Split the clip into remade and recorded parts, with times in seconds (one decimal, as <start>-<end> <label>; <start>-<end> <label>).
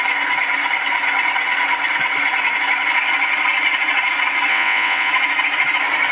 0.0-4.5 recorded; 4.5-5.1 remade; 5.1-6.1 recorded